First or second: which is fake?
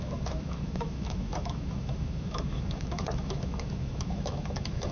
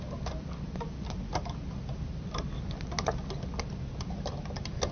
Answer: first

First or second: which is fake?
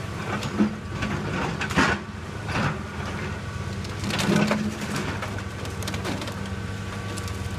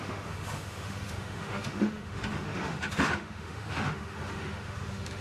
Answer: second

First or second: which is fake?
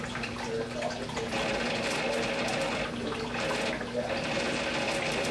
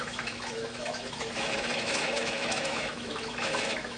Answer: second